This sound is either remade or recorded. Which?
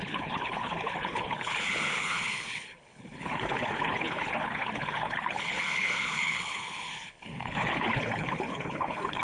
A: remade